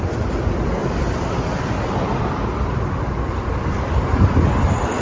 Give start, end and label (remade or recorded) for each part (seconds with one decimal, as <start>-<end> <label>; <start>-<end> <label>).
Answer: 0.0-0.8 recorded; 0.8-3.8 remade; 3.8-5.0 recorded